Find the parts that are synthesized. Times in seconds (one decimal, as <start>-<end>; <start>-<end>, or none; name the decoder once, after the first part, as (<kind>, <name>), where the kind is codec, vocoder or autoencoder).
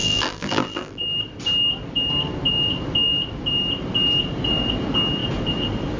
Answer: 0.0-1.2 (vocoder, BigVGAN v2)